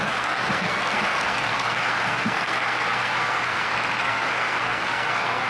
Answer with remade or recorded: remade